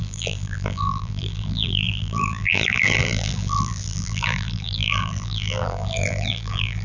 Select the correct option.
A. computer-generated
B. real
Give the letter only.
A